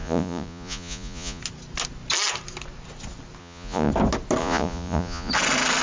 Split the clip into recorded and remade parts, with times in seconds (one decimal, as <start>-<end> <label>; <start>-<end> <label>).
0.0-1.4 remade; 1.4-3.4 recorded; 3.4-3.9 remade; 3.9-4.4 recorded; 4.4-5.3 remade; 5.3-5.8 recorded